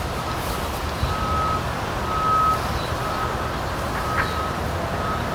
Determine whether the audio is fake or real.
real